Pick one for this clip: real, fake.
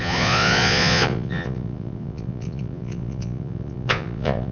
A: fake